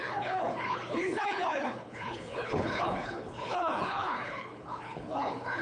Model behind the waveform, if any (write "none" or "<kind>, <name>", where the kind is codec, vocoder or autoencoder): codec, HILCodec